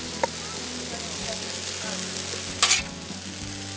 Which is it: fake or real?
real